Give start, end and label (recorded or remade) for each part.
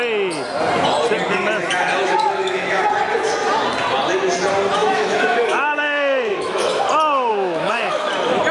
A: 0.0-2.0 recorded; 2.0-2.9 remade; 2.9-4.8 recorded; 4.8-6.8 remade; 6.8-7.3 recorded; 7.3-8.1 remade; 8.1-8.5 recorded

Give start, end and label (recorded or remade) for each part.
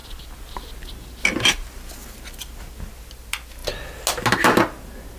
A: 0.0-5.2 recorded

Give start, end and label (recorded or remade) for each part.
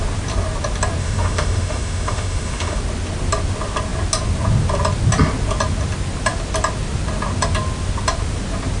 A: 0.0-1.0 recorded; 1.0-2.8 remade; 2.8-8.8 recorded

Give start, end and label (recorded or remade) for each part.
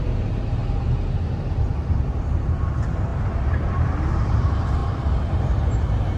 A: 0.0-0.6 remade; 0.6-1.9 recorded; 1.9-6.2 remade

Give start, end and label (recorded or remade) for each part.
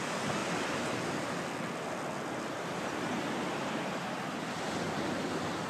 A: 0.0-5.7 recorded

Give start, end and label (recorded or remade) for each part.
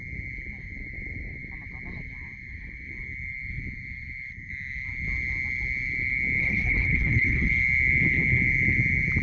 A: 0.0-6.4 recorded; 6.4-7.5 remade; 7.5-9.2 recorded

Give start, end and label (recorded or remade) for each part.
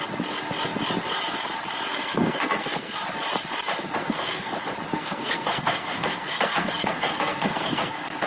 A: 0.0-1.9 recorded; 1.9-3.0 remade; 3.0-4.0 recorded; 4.0-4.5 remade; 4.5-4.9 recorded; 4.9-8.3 remade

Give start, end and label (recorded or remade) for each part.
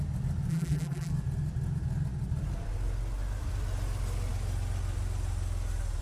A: 0.0-0.5 recorded; 0.5-1.1 remade; 1.1-6.0 recorded